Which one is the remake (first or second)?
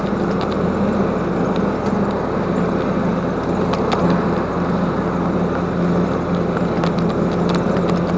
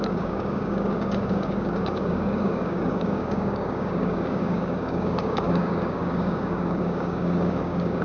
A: second